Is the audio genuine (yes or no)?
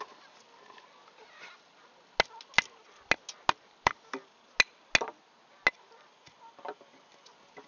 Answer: yes